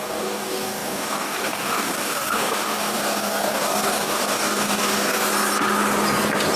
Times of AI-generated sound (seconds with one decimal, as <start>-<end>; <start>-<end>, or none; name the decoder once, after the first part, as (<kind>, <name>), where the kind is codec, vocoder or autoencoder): 0.0-5.2 (codec, DAC)